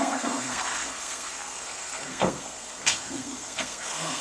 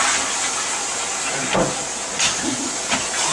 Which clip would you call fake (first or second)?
first